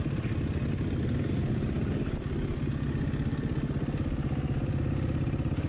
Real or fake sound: real